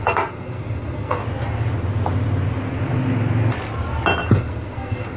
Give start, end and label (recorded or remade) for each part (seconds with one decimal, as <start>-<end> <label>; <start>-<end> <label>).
0.0-1.2 remade; 1.2-4.3 recorded; 4.3-5.2 remade